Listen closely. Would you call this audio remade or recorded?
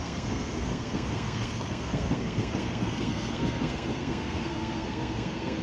remade